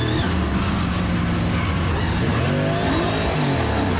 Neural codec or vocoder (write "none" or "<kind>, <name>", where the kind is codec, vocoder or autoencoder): none